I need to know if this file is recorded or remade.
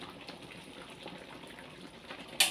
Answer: recorded